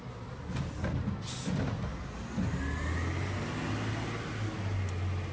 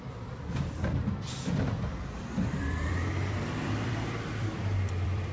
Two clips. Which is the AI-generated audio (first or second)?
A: second